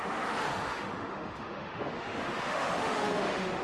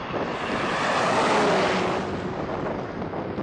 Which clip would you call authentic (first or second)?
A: second